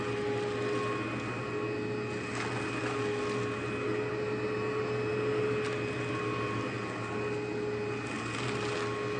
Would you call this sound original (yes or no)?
yes